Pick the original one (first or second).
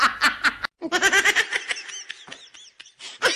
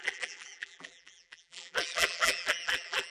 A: first